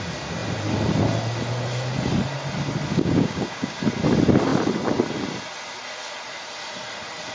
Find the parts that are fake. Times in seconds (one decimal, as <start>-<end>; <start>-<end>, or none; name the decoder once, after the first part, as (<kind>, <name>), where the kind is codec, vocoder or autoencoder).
2.9-3.8 (codec, DAC)